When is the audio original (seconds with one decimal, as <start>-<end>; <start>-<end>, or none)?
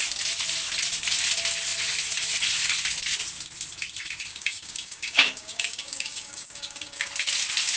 0.0-4.3; 7.1-7.8